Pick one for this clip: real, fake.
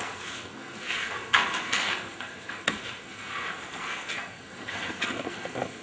fake